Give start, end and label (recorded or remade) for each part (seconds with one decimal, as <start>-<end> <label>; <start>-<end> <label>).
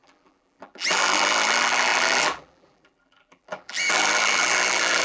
0.0-5.0 remade